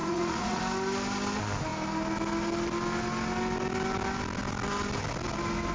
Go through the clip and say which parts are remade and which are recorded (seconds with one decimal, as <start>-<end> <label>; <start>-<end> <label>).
0.0-0.6 remade; 0.6-5.7 recorded

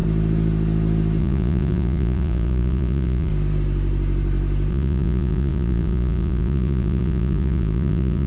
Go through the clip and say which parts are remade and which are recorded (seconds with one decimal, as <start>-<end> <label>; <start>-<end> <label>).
0.0-1.2 recorded; 1.2-3.3 remade; 3.3-4.7 recorded; 4.7-8.3 remade

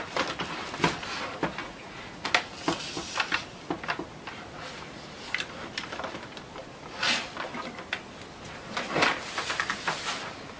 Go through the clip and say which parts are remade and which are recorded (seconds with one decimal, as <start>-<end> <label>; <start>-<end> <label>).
0.0-1.6 recorded; 1.6-2.3 remade; 2.3-10.6 recorded

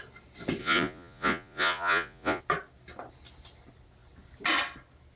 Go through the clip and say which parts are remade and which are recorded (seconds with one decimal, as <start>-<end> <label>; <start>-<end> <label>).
0.0-0.6 recorded; 0.6-2.4 remade; 2.4-5.2 recorded

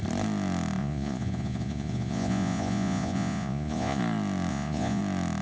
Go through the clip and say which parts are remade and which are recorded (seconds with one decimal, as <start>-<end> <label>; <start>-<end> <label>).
0.0-0.8 recorded; 0.8-4.0 remade; 4.0-4.5 recorded; 4.5-5.0 remade; 5.0-5.4 recorded

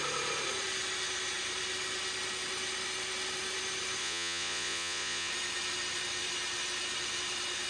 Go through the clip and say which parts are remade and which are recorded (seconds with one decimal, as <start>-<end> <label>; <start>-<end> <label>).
0.0-4.0 recorded; 4.0-5.3 remade; 5.3-7.7 recorded

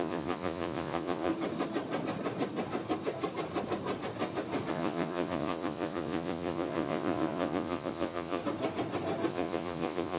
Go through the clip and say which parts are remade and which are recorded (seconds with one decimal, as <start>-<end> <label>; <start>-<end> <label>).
0.0-1.3 remade; 1.3-4.7 recorded; 4.7-8.4 remade; 8.4-9.3 recorded; 9.3-10.2 remade